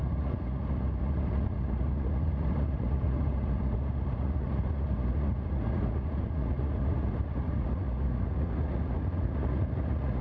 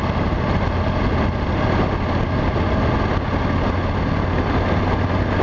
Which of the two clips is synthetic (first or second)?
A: first